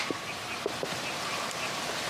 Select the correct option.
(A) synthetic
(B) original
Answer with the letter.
B